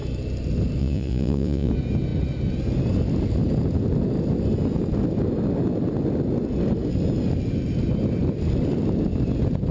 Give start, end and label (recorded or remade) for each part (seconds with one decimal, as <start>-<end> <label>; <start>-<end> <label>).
0.0-0.8 recorded; 0.8-1.7 remade; 1.7-9.7 recorded